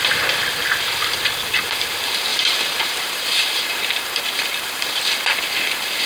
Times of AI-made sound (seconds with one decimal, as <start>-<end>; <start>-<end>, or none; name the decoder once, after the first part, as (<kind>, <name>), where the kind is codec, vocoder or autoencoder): 2.3-5.1 (vocoder, BigVGAN v2)